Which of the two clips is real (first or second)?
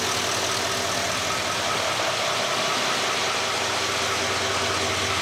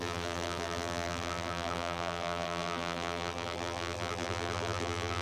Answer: first